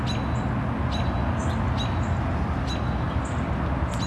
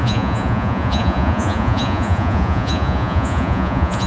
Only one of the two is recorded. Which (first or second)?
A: first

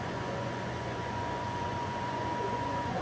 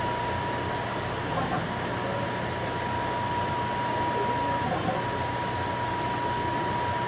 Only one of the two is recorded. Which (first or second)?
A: second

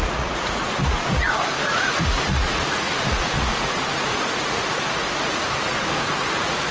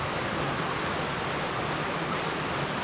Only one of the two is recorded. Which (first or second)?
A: second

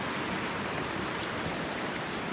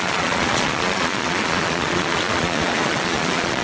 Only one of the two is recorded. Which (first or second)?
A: first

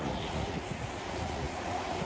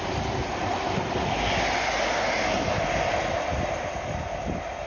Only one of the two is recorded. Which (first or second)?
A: second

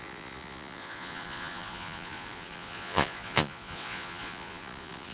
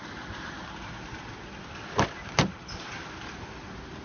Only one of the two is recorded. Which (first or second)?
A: second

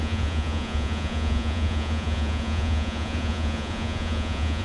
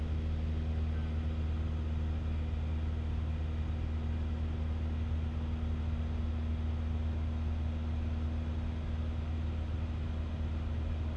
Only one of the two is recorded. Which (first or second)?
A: second